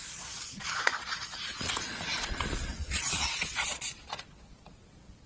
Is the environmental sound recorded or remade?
remade